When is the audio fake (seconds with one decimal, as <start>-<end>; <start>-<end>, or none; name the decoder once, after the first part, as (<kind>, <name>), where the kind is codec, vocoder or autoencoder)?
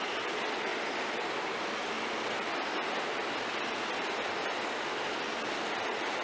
0.7-1.9 (vocoder, BigVGAN v2)